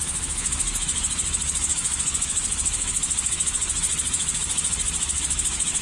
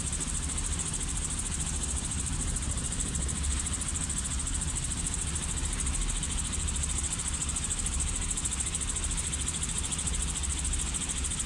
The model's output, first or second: first